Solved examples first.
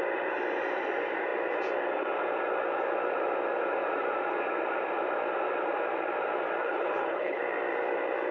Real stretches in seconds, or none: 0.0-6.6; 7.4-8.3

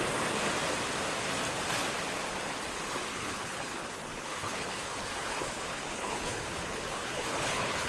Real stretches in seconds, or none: 0.0-3.1

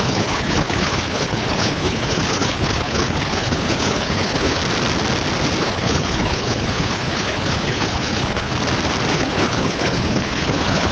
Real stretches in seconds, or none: 4.6-5.6; 8.5-9.1

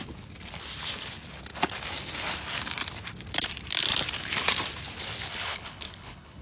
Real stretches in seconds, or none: 0.0-5.3

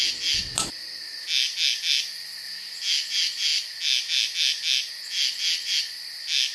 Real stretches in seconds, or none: 0.0-6.5